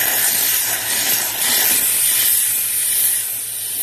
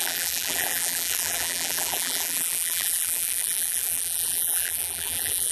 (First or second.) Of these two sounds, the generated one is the second